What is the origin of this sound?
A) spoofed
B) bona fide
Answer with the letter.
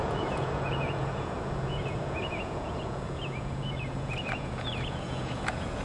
A